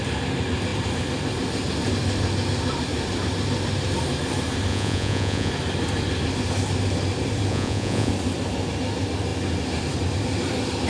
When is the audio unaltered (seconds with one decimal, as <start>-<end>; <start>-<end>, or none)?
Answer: 0.0-4.7; 5.5-7.5; 8.1-10.9